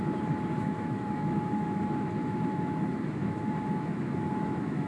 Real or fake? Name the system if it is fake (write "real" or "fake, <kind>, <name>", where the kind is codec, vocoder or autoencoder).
fake, autoencoder, DAC-VAE